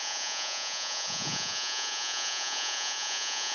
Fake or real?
fake